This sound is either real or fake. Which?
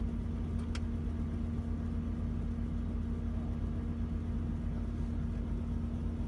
real